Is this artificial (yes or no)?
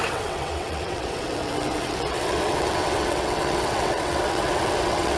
yes